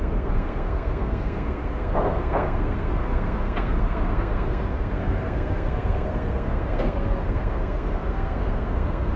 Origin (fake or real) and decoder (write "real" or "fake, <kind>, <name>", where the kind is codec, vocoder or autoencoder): fake, codec, SNAC